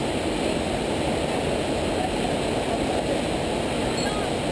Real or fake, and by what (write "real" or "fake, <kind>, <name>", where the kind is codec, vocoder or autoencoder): real